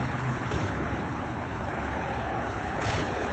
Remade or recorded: remade